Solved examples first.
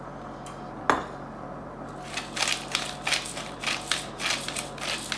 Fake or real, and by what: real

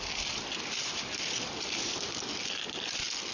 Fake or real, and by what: real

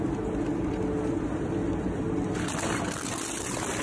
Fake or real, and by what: real